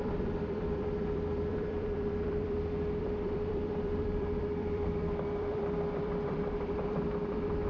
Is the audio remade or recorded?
remade